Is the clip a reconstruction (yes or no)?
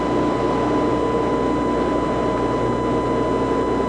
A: no